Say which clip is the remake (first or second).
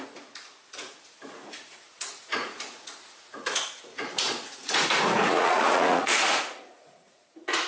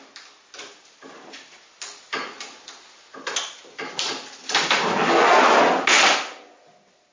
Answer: first